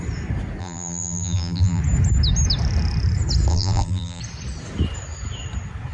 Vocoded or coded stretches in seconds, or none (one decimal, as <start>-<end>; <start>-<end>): 0.6-1.8; 3.5-4.2